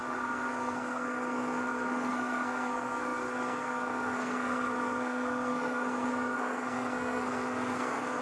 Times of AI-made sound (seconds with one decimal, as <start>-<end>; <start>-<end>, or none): 0.0-8.2